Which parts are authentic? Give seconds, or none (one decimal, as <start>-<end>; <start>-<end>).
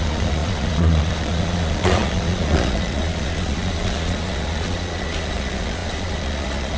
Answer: none